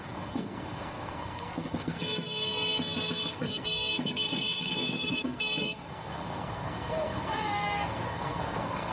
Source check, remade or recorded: remade